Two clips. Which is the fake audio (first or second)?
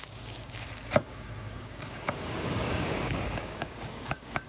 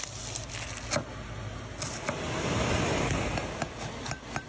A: first